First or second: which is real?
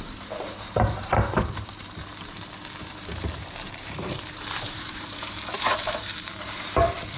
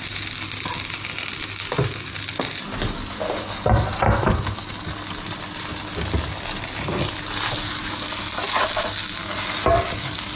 second